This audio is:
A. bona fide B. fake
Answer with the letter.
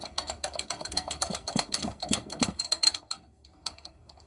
B